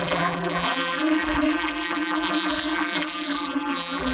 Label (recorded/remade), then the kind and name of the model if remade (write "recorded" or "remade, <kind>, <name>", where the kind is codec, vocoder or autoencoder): remade, vocoder, BigVGAN v2